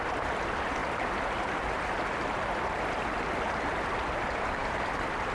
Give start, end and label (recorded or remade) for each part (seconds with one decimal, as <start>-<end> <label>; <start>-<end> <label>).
0.0-5.3 recorded